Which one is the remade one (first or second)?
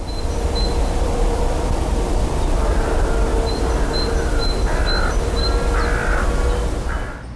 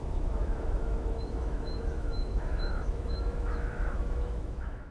second